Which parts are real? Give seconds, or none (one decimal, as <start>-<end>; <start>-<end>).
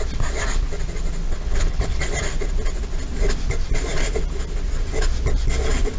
0.0-1.2; 2.0-6.0